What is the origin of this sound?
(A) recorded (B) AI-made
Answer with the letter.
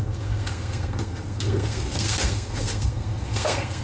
B